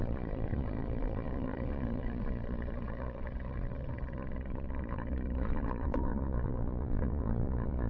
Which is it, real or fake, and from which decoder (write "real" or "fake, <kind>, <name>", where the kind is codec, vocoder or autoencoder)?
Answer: fake, vocoder, Vocos